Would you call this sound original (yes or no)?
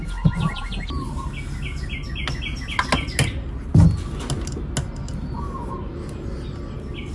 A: yes